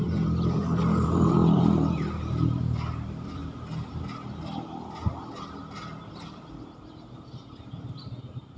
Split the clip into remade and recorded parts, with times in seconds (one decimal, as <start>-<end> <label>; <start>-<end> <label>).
0.0-3.4 remade; 3.4-6.0 recorded; 6.0-8.6 remade